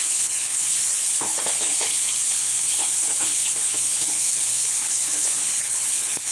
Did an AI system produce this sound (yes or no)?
yes